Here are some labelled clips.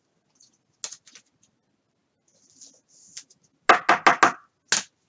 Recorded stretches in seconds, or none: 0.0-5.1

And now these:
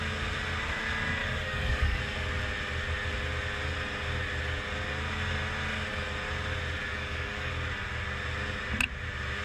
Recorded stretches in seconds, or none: 0.0-1.2; 2.0-6.9; 7.5-9.4

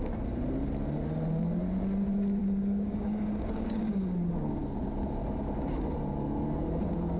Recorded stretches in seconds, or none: 0.0-2.4; 4.5-7.2

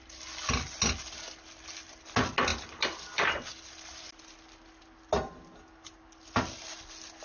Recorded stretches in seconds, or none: 0.0-7.2

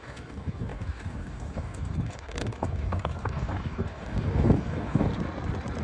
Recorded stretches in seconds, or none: 5.1-5.8

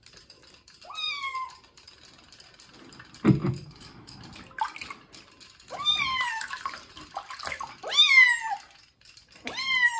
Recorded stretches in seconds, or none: 0.0-3.4; 4.2-10.0

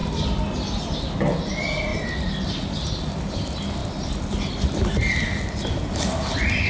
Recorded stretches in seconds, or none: 0.0-6.7

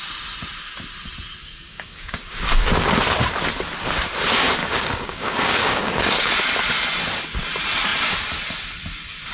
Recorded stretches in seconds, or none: 0.0-1.4; 2.2-4.6; 6.3-9.3